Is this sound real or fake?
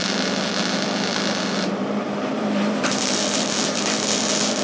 fake